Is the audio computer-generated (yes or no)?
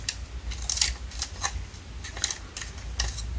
no